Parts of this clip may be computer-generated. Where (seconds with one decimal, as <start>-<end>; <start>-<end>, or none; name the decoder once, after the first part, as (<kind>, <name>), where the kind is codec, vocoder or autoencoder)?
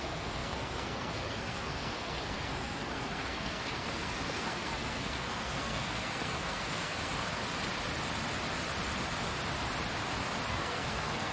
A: 0.0-7.4 (codec, SNAC); 10.5-11.3